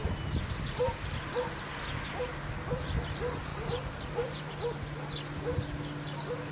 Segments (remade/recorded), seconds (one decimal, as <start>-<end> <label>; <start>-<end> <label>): 0.0-3.5 recorded; 3.5-4.5 remade; 4.5-6.5 recorded

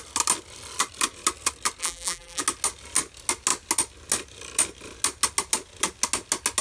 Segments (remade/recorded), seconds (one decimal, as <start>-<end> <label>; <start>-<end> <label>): 0.0-1.8 recorded; 1.8-2.4 remade; 2.4-6.6 recorded

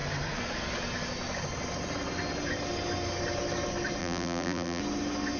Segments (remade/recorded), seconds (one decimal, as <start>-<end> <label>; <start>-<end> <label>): 0.0-4.0 recorded; 4.0-4.8 remade; 4.8-5.4 recorded

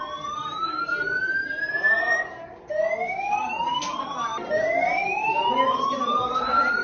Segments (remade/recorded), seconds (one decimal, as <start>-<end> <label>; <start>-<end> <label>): 0.0-1.4 recorded; 1.4-2.0 remade; 2.0-6.8 recorded

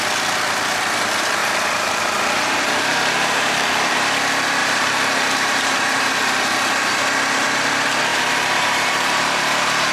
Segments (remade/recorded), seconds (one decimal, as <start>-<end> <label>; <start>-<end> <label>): 0.0-1.4 recorded; 1.4-3.7 remade; 3.7-4.6 recorded; 4.6-6.0 remade; 6.0-8.1 recorded; 8.1-9.4 remade; 9.4-9.9 recorded

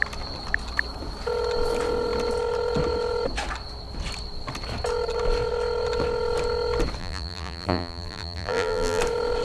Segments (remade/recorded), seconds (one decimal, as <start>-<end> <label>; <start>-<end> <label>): 0.0-7.0 recorded; 7.0-9.0 remade; 9.0-9.4 recorded